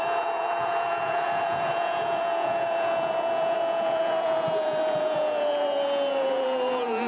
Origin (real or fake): fake